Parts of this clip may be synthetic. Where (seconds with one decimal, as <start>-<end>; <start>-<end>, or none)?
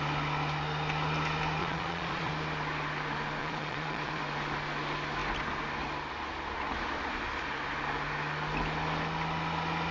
1.6-2.3; 3.4-4.2